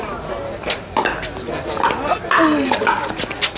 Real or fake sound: real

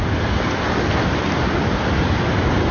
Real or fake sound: real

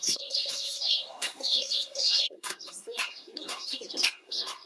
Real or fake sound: fake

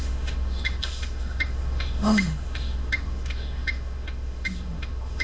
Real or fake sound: fake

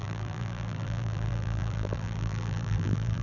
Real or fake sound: fake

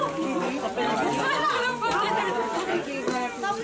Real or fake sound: real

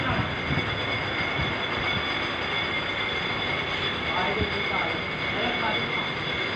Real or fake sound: real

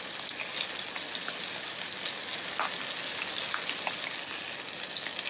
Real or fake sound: real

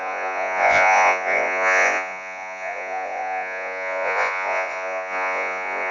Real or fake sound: fake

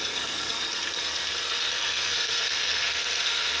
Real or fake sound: fake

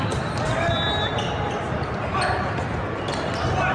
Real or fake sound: real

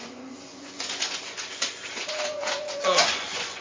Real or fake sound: fake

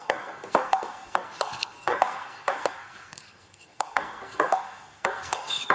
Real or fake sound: fake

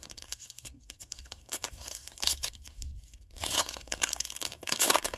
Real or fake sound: fake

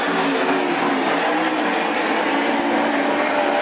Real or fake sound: real